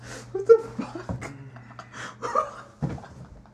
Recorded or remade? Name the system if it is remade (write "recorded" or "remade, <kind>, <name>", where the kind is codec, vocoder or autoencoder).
recorded